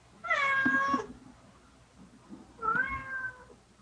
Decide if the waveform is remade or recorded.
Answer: recorded